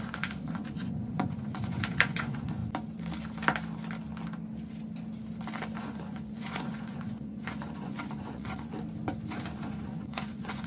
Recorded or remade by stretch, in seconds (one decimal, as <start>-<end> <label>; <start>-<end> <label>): 0.0-2.6 remade; 2.6-5.8 recorded; 5.8-8.7 remade; 8.7-9.3 recorded; 9.3-10.7 remade